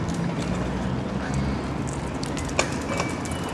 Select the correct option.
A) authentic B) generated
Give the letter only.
A